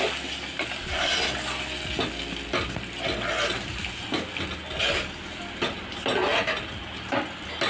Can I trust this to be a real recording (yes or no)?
yes